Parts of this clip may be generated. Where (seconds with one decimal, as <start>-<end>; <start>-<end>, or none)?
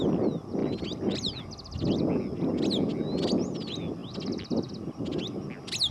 none